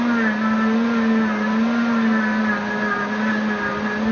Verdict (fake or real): real